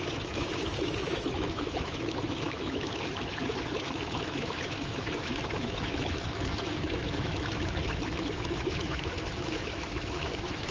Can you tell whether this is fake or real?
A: fake